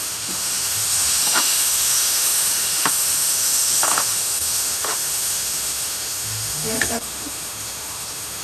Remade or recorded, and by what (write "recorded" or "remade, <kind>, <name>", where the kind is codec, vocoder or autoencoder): remade, autoencoder, DAC-VAE